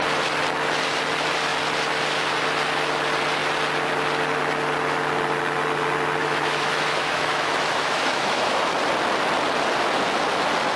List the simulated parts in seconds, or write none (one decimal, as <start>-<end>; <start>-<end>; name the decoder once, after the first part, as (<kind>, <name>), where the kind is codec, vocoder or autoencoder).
6.2-8.6 (autoencoder, DAC-VAE)